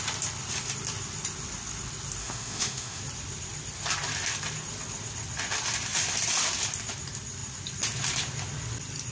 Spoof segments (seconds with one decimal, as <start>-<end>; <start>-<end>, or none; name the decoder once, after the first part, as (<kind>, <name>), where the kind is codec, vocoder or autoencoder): 2.2-3.0 (autoencoder, DAC-VAE)